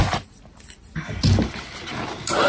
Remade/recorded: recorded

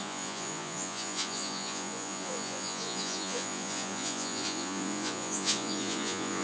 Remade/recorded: remade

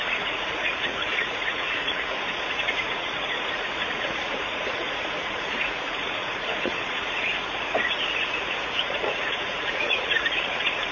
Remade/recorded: remade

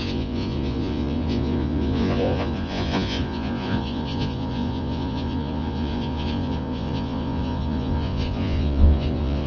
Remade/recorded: remade